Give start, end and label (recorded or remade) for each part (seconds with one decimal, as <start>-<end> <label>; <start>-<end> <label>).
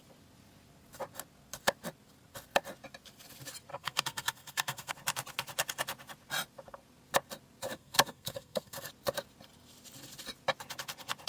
0.0-3.7 recorded; 3.7-4.9 remade; 4.9-7.7 recorded; 7.7-8.9 remade; 8.9-11.3 recorded